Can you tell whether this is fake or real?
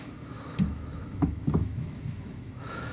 fake